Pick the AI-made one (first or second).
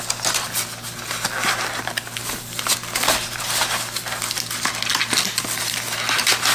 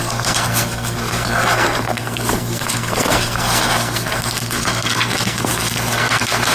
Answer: second